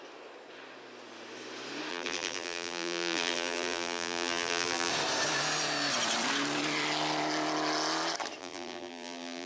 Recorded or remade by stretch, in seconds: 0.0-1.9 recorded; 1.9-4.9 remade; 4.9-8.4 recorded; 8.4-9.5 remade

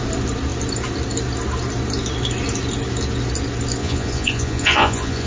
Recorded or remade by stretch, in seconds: 0.0-3.8 recorded; 3.8-5.3 remade

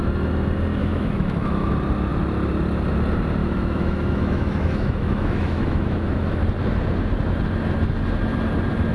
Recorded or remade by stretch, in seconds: 0.0-0.8 recorded; 0.8-1.7 remade; 1.7-3.4 recorded; 3.4-6.4 remade; 6.4-8.9 recorded

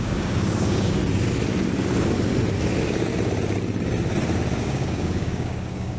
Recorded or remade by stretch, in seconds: 0.0-1.0 remade; 1.0-4.6 recorded; 4.6-6.0 remade

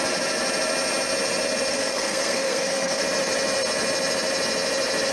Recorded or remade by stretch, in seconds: 0.0-1.7 recorded; 1.7-3.0 remade; 3.0-5.1 recorded

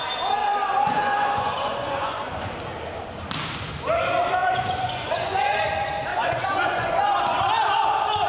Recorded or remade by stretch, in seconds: 0.0-0.4 recorded; 0.4-2.5 remade; 2.5-4.4 recorded; 4.4-5.6 remade; 5.6-6.1 recorded; 6.1-7.4 remade; 7.4-8.3 recorded